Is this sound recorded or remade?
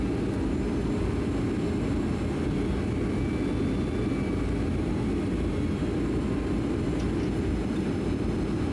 recorded